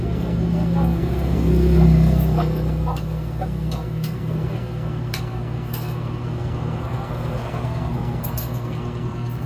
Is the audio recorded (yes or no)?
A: no